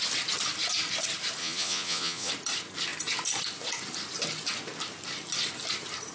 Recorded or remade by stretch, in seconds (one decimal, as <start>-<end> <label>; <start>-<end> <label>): 0.0-1.4 recorded; 1.4-2.3 remade; 2.3-6.1 recorded